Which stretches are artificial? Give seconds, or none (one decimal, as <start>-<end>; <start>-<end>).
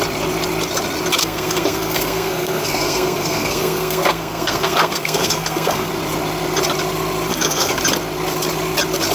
1.2-5.9; 7.3-7.8